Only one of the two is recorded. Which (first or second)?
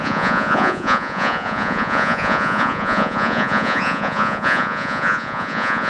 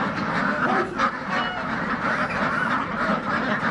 second